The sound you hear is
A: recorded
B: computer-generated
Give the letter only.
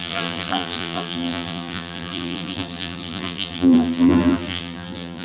B